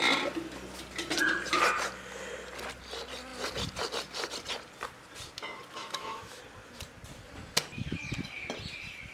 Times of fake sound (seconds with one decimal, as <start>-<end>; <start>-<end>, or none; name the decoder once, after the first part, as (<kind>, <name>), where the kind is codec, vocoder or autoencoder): 5.8-6.4 (autoencoder, DAC-VAE)